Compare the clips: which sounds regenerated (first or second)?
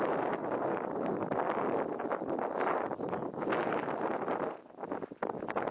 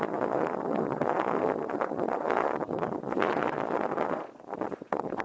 second